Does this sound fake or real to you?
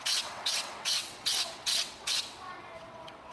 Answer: fake